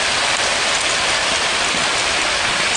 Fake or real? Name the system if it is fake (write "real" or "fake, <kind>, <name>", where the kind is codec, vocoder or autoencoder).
fake, vocoder, BigVGAN v2